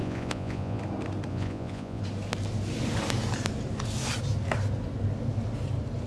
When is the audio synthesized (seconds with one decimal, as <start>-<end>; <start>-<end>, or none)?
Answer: 0.0-0.8; 1.3-2.0